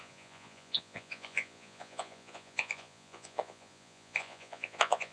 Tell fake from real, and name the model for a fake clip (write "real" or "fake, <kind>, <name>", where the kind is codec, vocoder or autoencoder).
fake, vocoder, Vocos